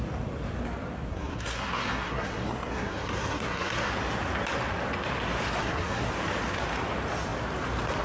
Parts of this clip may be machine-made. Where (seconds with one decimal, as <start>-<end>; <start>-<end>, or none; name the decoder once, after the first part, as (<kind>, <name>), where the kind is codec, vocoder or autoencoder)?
1.1-3.9 (codec, SNAC); 5.6-6.1